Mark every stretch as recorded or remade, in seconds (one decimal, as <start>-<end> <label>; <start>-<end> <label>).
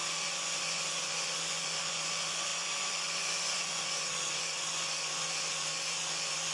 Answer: 0.0-6.5 remade